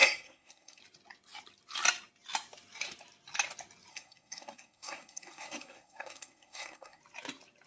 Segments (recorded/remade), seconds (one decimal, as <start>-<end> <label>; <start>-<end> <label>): 0.0-0.8 remade; 0.8-3.9 recorded; 3.9-7.0 remade; 7.0-7.7 recorded